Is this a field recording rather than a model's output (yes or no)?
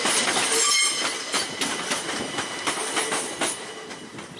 yes